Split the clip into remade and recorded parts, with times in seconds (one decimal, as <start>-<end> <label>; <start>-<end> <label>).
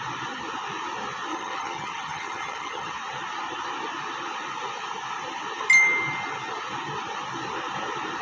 0.0-1.3 recorded; 1.3-2.9 remade; 2.9-8.2 recorded